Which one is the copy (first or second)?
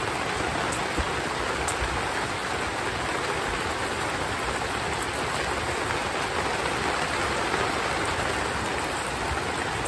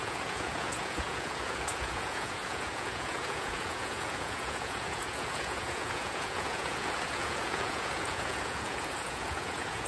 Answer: second